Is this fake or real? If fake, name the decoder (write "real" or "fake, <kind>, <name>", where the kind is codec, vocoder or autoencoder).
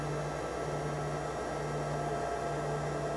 real